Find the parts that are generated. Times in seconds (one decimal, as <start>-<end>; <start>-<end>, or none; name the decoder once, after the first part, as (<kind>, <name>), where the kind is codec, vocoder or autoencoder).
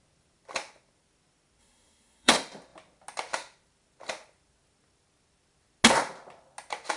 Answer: 1.6-2.3 (codec, SNAC)